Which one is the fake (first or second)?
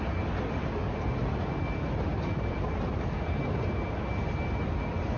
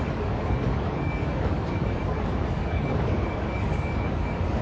second